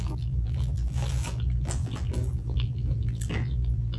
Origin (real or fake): fake